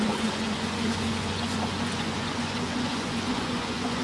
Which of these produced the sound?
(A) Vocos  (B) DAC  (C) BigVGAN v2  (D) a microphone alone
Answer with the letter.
A